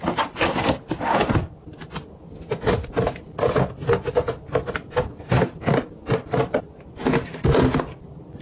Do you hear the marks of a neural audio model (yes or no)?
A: no